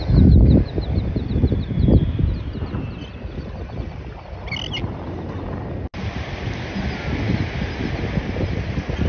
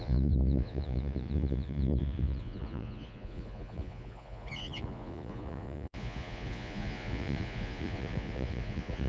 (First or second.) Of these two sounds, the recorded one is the first